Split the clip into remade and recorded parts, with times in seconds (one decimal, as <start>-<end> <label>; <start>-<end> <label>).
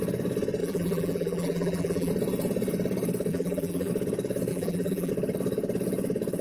0.0-0.6 recorded; 0.6-2.1 remade; 2.1-3.3 recorded; 3.3-3.9 remade; 3.9-4.5 recorded; 4.5-5.1 remade; 5.1-6.4 recorded